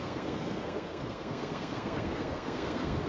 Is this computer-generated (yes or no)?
yes